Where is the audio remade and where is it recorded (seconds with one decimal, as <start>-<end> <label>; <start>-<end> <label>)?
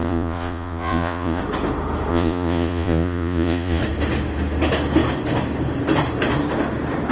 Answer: 0.0-1.4 remade; 1.4-2.1 recorded; 2.1-3.8 remade; 3.8-7.1 recorded